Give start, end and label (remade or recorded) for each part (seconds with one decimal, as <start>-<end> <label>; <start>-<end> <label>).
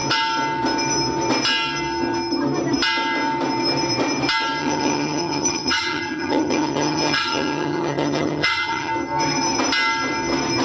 0.0-4.6 recorded; 4.6-8.9 remade; 8.9-10.6 recorded